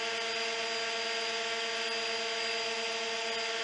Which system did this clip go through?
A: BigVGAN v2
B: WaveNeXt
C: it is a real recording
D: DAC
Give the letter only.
C